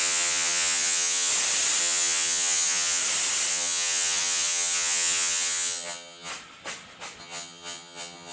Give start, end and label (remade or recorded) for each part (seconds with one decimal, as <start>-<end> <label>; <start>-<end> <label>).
0.0-1.3 remade; 1.3-1.8 recorded; 1.8-3.0 remade; 3.0-3.5 recorded; 3.5-6.3 remade; 6.3-7.2 recorded; 7.2-8.3 remade